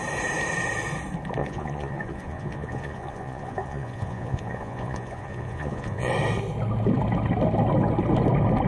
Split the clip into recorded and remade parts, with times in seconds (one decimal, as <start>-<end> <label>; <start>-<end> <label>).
0.0-1.4 recorded; 1.4-6.1 remade; 6.1-8.7 recorded